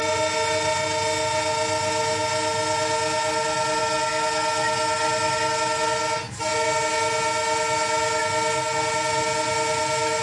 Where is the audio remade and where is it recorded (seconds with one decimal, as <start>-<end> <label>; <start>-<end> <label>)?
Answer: 0.0-10.2 recorded